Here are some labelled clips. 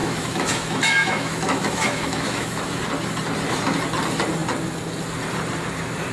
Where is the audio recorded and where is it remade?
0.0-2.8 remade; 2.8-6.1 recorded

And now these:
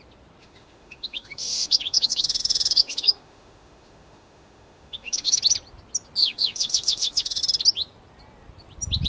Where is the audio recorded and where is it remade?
0.0-0.4 recorded; 0.4-5.4 remade; 5.4-6.2 recorded; 6.2-7.4 remade; 7.4-9.1 recorded

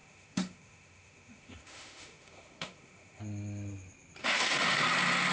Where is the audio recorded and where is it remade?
0.0-3.2 remade; 3.2-4.2 recorded; 4.2-4.8 remade; 4.8-5.3 recorded

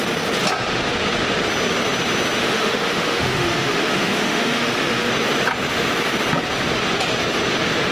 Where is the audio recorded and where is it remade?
0.0-2.4 recorded; 2.4-5.1 remade; 5.1-7.9 recorded

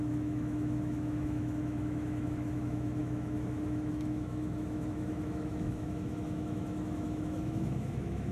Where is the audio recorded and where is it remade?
0.0-8.3 remade